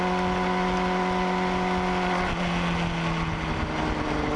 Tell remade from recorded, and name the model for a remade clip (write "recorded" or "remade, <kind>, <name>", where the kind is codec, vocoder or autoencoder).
recorded